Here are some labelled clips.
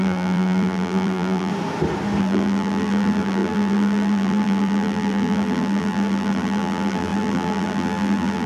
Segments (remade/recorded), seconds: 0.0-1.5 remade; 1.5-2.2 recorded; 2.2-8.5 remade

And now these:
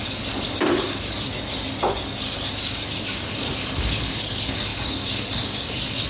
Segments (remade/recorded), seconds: 0.0-1.3 remade; 1.3-2.2 recorded; 2.2-6.1 remade